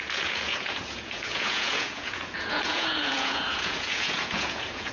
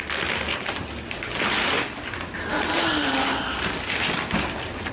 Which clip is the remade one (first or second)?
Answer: first